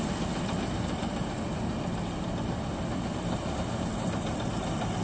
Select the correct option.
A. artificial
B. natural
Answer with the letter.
B